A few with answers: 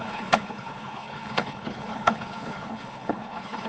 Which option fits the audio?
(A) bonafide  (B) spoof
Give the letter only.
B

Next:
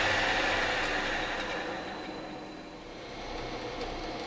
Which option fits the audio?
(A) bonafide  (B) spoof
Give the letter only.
A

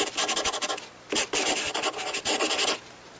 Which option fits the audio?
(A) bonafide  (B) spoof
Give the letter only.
B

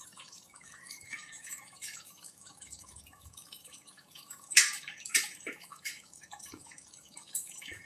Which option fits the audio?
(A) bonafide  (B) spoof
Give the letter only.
B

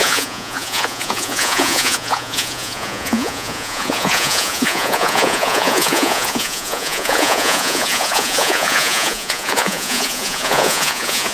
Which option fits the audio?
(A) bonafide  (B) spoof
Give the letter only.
B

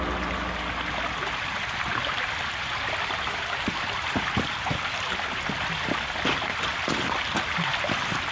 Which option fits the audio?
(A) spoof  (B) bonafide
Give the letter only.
B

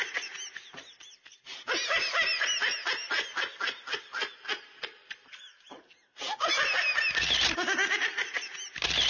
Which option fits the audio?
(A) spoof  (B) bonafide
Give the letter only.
B